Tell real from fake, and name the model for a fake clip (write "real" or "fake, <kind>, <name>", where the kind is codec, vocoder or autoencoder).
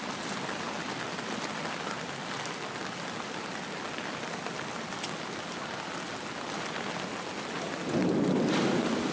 real